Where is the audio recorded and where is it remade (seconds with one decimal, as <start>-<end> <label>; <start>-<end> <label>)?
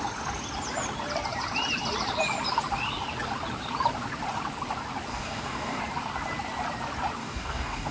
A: 0.0-5.1 recorded; 5.1-5.8 remade; 5.8-7.2 recorded; 7.2-7.9 remade